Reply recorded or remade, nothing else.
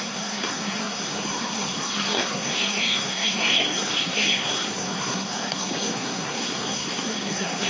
remade